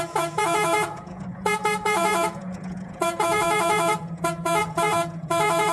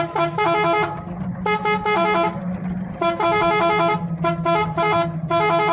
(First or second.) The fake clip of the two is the first